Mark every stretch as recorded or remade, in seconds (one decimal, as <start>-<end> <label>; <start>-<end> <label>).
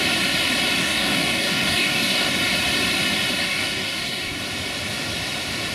0.0-0.8 recorded; 0.8-2.3 remade; 2.3-3.4 recorded; 3.4-4.4 remade; 4.4-5.7 recorded